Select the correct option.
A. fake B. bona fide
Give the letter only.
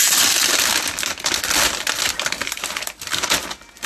B